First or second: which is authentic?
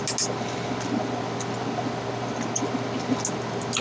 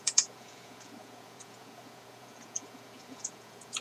first